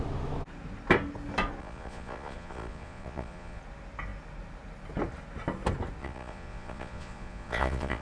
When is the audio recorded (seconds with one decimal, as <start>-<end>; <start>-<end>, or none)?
0.0-1.6; 3.6-6.0